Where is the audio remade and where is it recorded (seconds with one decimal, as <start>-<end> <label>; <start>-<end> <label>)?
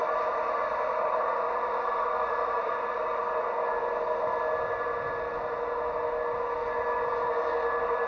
0.0-3.3 remade; 3.3-8.1 recorded